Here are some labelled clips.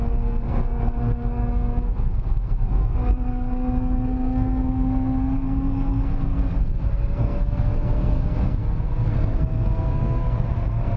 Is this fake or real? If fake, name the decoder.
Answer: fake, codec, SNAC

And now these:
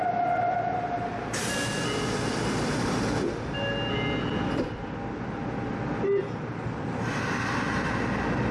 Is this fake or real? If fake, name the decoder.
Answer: real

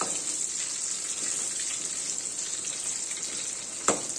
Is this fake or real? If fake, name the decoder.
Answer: real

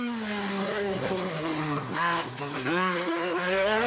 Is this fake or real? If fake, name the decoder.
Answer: fake, codec, SNAC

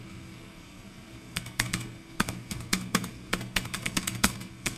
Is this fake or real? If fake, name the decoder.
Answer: fake, codec, SNAC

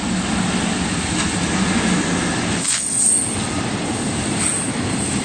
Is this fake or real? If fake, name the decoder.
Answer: real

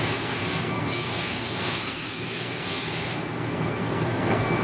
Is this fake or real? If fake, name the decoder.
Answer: fake, codec, SNAC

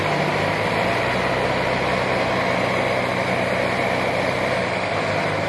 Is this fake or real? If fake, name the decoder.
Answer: real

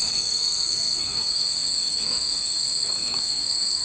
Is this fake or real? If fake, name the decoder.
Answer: fake, codec, SNAC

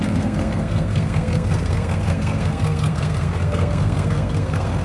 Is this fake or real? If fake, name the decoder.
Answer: fake, codec, SNAC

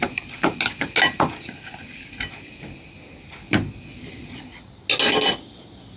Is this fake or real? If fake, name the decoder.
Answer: real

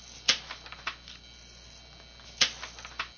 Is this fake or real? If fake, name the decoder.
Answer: real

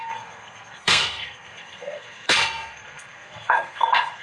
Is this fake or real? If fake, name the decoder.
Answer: fake, codec, SNAC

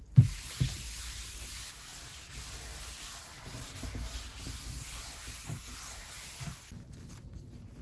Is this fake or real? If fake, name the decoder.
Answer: real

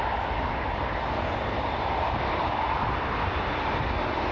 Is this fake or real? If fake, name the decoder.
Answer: real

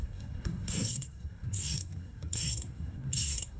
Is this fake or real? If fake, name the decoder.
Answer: fake, codec, SNAC